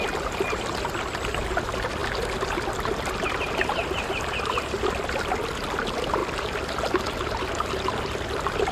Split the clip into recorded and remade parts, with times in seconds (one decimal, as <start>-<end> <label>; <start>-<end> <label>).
0.0-8.7 recorded